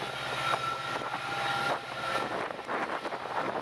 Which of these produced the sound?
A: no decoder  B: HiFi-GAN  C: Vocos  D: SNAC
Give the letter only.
A